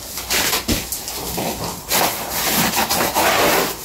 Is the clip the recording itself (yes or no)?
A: yes